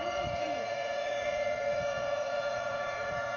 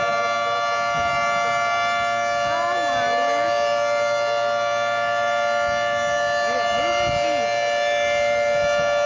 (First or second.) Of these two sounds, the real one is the second